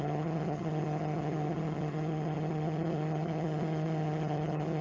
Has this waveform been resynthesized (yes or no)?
yes